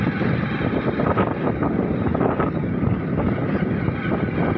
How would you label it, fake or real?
real